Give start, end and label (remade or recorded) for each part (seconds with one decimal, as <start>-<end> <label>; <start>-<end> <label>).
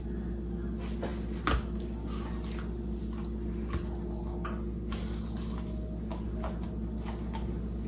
0.0-7.9 recorded